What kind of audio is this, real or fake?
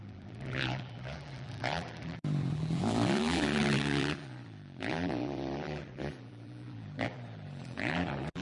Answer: fake